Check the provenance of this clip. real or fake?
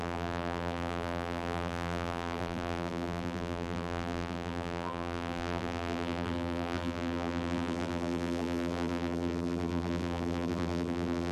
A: fake